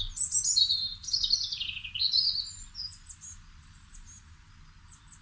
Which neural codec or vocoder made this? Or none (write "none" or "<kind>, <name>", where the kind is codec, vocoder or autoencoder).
none